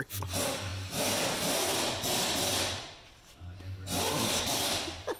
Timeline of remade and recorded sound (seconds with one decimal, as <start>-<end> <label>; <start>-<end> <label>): 0.0-5.2 recorded